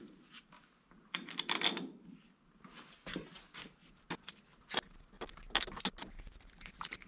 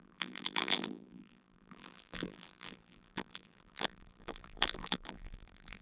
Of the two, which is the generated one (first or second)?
second